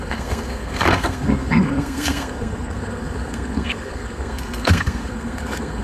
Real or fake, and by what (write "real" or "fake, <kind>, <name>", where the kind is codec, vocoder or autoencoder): fake, codec, SNAC